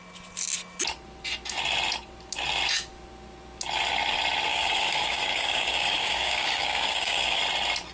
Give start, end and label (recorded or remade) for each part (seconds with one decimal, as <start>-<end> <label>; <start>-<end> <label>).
0.0-4.5 recorded; 4.5-7.4 remade; 7.4-7.9 recorded